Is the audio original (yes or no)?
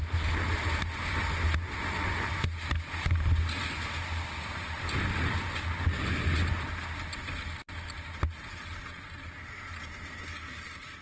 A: yes